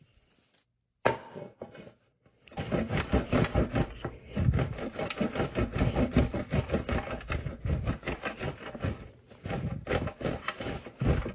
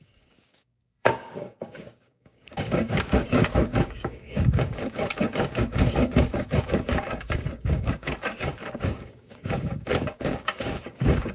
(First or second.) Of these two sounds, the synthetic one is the second